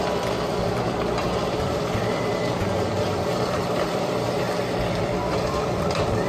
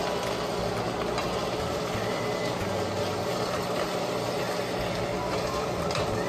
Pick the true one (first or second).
second